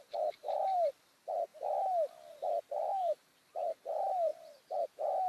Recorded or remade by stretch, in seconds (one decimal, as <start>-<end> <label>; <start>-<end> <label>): 0.0-1.5 remade; 1.5-2.6 recorded; 2.6-5.3 remade

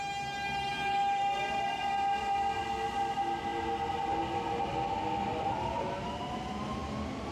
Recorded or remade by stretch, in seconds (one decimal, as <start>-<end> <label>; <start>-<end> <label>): 0.0-0.7 recorded; 0.7-1.2 remade; 1.2-7.3 recorded

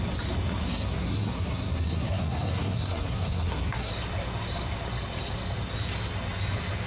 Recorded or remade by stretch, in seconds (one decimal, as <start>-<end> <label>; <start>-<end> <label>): 0.0-0.6 recorded; 0.6-3.9 remade; 3.9-6.9 recorded

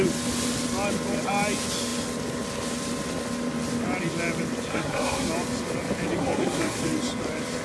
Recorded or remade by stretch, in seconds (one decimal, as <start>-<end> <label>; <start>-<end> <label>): 0.0-4.7 recorded; 4.7-5.3 remade; 5.3-6.2 recorded; 6.2-6.8 remade; 6.8-7.6 recorded

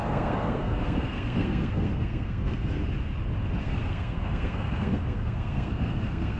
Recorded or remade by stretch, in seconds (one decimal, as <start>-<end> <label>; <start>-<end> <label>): 0.0-2.8 remade; 2.8-3.6 recorded; 3.6-6.4 remade

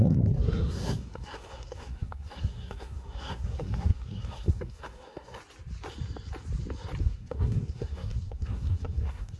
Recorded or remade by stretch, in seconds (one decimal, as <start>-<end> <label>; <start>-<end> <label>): 0.0-5.4 remade; 5.4-7.0 recorded; 7.0-9.4 remade